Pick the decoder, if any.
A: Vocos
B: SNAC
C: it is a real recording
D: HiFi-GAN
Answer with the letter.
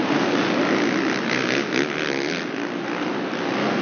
C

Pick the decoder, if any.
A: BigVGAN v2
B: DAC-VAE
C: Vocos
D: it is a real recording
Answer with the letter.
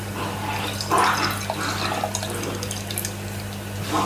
D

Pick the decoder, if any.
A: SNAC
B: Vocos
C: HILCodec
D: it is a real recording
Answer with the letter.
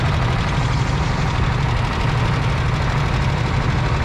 D